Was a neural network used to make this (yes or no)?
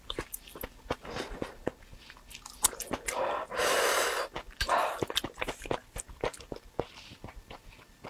no